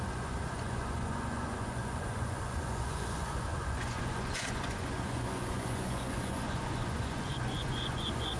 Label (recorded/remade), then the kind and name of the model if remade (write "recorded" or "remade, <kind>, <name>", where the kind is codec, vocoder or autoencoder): remade, vocoder, Vocos